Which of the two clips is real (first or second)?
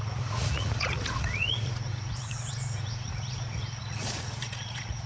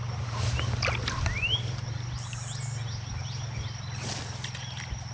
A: second